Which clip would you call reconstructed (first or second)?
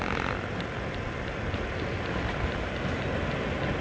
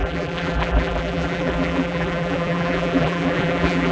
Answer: second